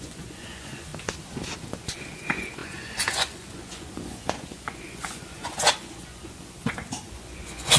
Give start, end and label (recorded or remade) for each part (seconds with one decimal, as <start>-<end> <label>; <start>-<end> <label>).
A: 0.0-0.9 remade; 0.9-1.7 recorded; 1.7-7.8 remade